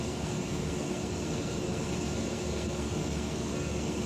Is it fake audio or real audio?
fake